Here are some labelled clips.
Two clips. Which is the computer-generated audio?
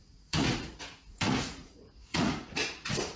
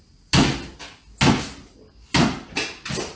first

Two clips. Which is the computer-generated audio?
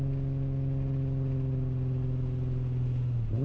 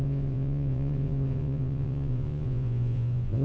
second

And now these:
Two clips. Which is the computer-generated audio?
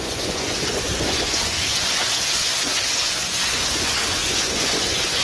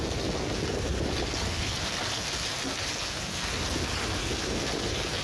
first